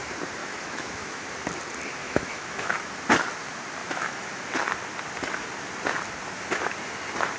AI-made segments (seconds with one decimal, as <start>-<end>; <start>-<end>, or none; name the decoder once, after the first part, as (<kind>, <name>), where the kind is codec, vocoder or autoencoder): 0.4-1.3 (autoencoder, DAC-VAE); 2.0-2.8; 3.8-4.5